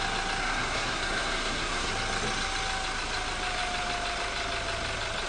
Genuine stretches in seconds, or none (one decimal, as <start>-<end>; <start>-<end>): 0.0-0.4; 1.9-5.3